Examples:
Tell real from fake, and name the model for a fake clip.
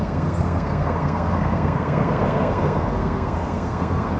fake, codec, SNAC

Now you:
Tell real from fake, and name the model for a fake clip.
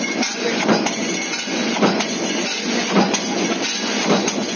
fake, vocoder, Vocos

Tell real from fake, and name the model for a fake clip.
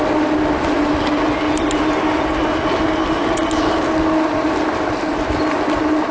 real